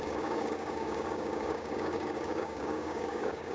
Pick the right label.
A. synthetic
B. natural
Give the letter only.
A